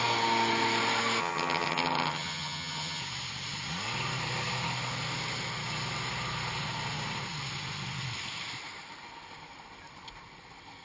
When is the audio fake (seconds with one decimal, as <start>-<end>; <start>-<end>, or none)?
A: 1.2-3.0